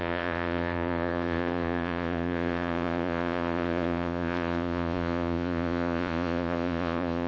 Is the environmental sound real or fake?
fake